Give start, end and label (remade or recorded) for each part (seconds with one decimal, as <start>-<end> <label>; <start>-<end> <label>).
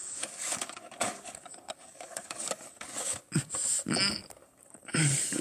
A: 0.0-3.2 remade; 3.2-4.4 recorded; 4.4-5.4 remade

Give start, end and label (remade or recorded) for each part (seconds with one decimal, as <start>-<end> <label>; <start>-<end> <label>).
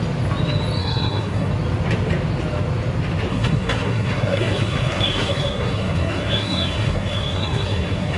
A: 0.0-0.8 recorded; 0.8-1.5 remade; 1.5-3.3 recorded; 3.3-8.2 remade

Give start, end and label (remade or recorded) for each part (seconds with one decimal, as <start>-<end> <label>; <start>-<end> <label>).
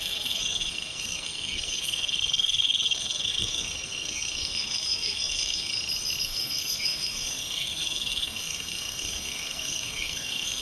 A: 0.0-5.7 remade; 5.7-6.2 recorded; 6.2-10.6 remade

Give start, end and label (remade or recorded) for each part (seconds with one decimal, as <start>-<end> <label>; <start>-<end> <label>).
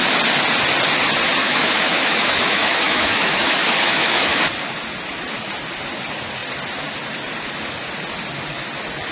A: 0.0-1.4 recorded; 1.4-4.4 remade; 4.4-9.1 recorded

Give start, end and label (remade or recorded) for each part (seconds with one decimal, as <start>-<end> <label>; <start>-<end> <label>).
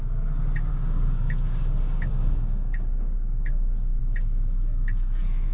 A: 0.0-0.7 recorded; 0.7-4.0 remade; 4.0-5.5 recorded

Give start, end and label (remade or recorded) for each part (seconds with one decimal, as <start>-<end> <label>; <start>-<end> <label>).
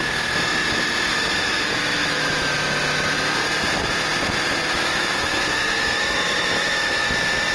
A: 0.0-1.1 recorded; 1.1-2.5 remade; 2.5-4.6 recorded; 4.6-7.1 remade; 7.1-7.5 recorded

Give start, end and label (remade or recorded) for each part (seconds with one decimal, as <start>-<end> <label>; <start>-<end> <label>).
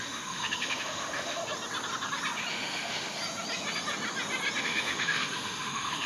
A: 0.0-1.4 remade; 1.4-2.5 recorded; 2.5-3.2 remade; 3.2-4.6 recorded; 4.6-6.1 remade